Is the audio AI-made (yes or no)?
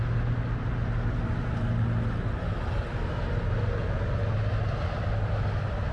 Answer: no